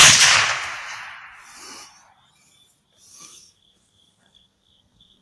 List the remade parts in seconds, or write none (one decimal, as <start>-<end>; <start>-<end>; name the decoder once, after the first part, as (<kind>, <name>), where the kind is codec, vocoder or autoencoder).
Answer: 3.1-5.2 (codec, SNAC)

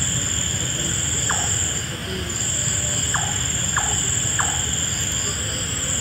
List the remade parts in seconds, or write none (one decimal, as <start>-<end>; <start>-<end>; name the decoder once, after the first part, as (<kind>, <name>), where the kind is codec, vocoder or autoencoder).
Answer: none